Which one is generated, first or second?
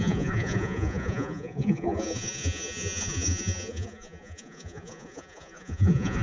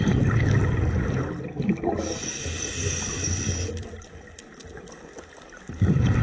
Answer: first